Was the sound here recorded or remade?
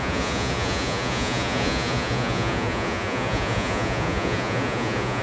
remade